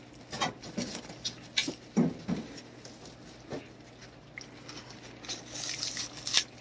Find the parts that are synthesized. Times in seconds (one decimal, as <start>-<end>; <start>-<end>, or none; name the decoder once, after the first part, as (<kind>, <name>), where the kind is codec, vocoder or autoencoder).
none